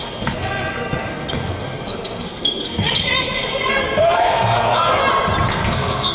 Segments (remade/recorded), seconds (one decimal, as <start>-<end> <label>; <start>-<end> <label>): 0.0-5.0 remade; 5.0-5.5 recorded; 5.5-6.1 remade

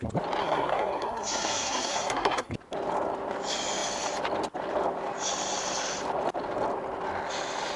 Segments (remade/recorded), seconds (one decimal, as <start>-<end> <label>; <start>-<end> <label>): 0.0-0.4 recorded; 0.4-2.5 remade; 2.5-7.8 recorded

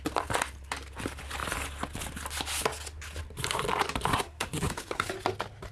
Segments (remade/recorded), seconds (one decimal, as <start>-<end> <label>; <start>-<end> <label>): 0.0-4.1 recorded; 4.1-5.1 remade; 5.1-5.7 recorded

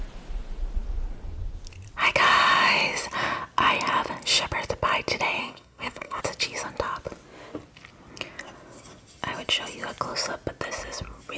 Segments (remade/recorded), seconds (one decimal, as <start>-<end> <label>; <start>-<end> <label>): 0.0-5.4 recorded; 5.4-6.2 remade; 6.2-11.4 recorded